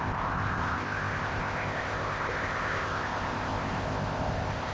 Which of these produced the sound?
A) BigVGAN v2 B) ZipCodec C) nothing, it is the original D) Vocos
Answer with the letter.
B